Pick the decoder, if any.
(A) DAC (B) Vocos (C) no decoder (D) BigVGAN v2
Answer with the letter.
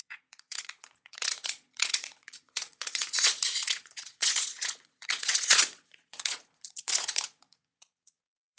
B